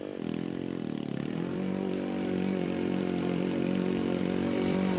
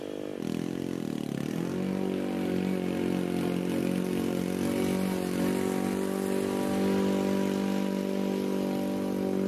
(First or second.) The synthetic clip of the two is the first